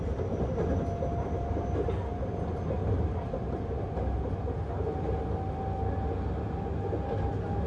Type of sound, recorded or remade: recorded